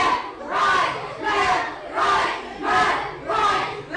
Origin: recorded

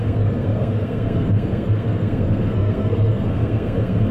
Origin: remade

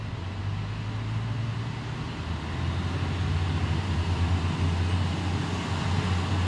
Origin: recorded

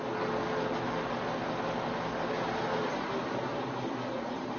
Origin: recorded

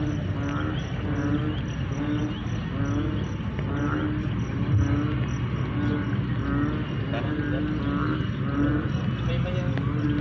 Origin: recorded